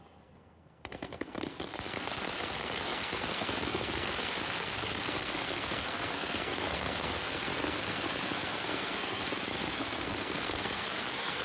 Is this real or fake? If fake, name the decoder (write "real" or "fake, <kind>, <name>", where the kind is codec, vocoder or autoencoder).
fake, codec, SNAC